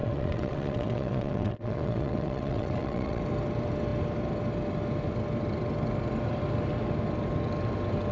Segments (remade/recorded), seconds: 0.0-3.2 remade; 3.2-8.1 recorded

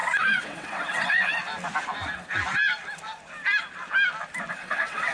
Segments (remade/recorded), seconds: 0.0-1.4 remade; 1.4-4.5 recorded; 4.5-5.1 remade

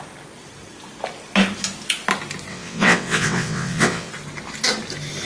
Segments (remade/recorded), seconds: 0.0-2.5 recorded; 2.5-4.1 remade; 4.1-5.3 recorded

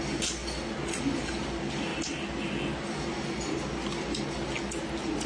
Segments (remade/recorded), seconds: 0.0-5.3 recorded